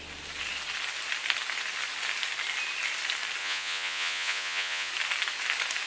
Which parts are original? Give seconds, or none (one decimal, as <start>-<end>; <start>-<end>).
0.0-3.4; 4.9-5.9